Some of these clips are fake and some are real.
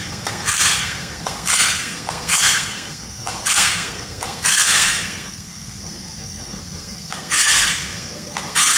fake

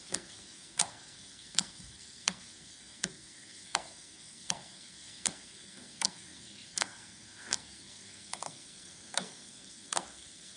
fake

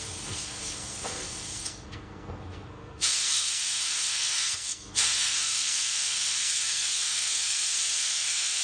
fake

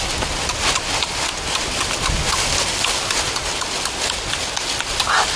real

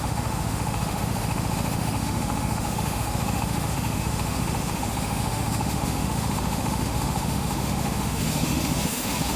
fake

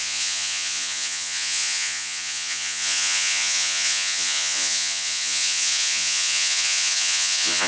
fake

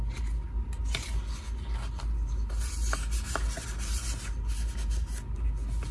real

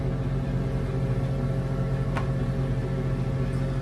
real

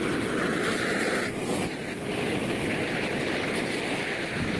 real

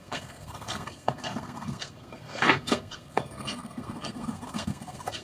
fake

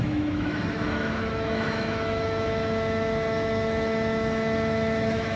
fake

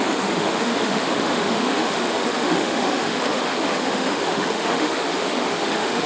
fake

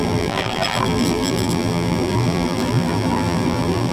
fake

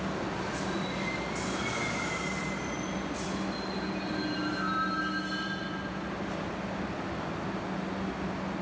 real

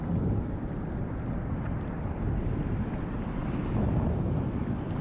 real